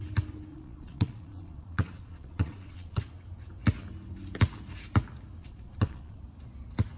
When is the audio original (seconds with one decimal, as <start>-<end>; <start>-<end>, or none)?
0.0-0.5; 3.0-5.4; 6.2-7.0